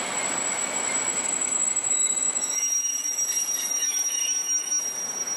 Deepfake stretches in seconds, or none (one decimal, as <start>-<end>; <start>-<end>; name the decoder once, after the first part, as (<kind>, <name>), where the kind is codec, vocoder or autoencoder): 1.1-3.2 (autoencoder, DAC-VAE); 3.7-4.8